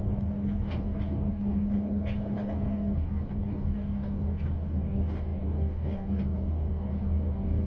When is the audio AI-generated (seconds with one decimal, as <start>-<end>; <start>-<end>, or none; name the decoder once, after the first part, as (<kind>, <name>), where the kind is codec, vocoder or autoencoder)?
0.0-7.7 (codec, DAC)